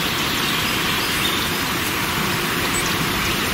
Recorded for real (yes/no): yes